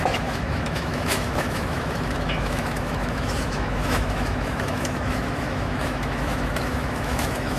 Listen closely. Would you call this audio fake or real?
fake